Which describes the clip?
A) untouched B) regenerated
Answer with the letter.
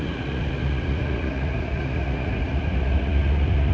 B